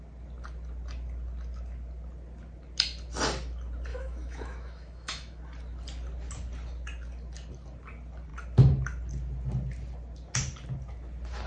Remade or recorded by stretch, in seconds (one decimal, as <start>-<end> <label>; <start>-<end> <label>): 0.0-3.9 recorded; 3.9-5.4 remade; 5.4-11.5 recorded